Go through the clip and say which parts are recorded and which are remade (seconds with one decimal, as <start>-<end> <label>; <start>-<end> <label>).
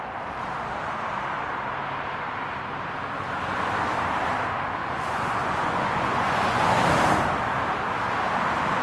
0.0-4.8 recorded; 4.8-6.8 remade; 6.8-8.8 recorded